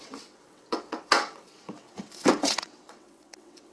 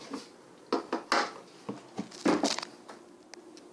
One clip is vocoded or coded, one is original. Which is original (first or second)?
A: second